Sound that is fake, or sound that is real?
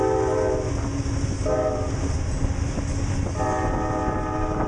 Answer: real